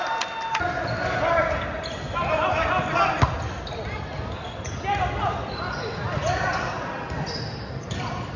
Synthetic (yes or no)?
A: no